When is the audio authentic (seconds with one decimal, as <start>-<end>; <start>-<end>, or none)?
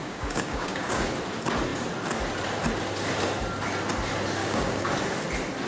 1.1-4.4; 4.9-5.7